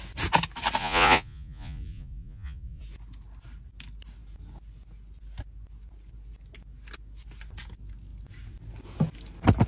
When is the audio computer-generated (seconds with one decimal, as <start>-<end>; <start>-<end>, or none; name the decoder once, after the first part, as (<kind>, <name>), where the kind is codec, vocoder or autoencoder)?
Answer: 0.8-2.8 (vocoder, Vocos)